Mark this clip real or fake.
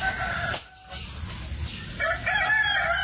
real